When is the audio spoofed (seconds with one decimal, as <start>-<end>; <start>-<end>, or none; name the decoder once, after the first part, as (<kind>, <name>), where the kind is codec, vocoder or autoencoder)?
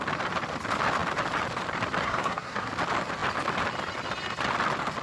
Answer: 2.0-2.7 (codec, SNAC)